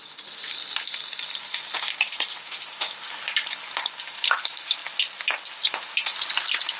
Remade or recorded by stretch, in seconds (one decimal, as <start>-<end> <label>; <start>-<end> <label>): 0.0-6.8 recorded